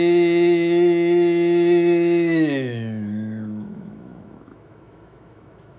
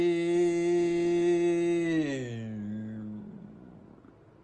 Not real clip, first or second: first